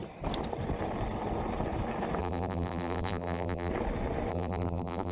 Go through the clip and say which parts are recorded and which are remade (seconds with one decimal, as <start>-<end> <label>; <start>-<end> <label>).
0.0-2.2 recorded; 2.2-3.7 remade; 3.7-4.3 recorded; 4.3-5.1 remade